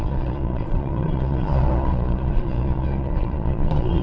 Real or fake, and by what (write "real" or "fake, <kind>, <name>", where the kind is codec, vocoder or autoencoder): fake, vocoder, Vocos